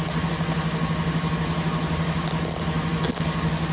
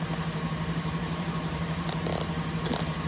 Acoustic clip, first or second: first